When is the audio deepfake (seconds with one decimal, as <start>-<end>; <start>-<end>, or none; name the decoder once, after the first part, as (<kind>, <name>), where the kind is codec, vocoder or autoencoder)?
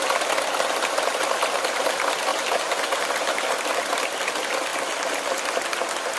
none